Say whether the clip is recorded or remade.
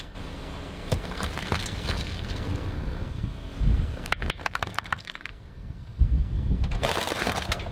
remade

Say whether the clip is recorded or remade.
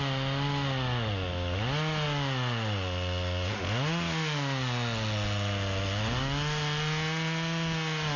recorded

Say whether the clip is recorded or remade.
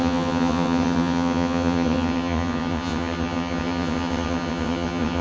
remade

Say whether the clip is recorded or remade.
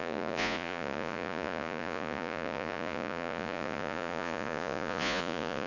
remade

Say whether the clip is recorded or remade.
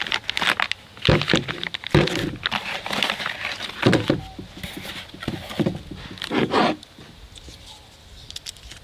recorded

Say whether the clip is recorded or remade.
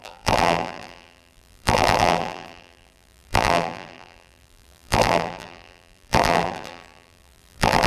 remade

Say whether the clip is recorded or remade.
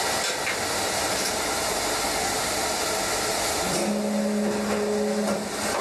recorded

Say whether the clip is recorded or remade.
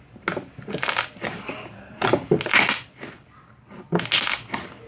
recorded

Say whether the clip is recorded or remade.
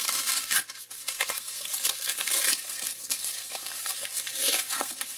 remade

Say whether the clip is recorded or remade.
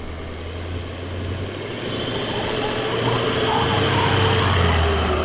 recorded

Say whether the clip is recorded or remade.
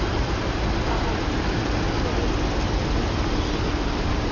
recorded